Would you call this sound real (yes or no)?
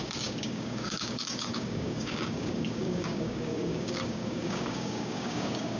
no